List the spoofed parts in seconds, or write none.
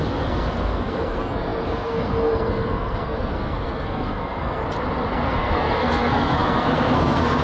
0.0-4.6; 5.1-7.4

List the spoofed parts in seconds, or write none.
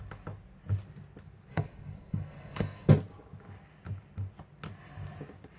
1.5-2.9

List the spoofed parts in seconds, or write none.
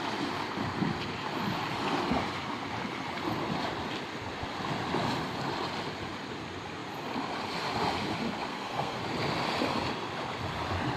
8.5-9.0